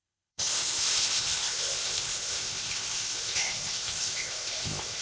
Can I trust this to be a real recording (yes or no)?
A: no